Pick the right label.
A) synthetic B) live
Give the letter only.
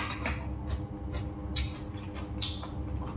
B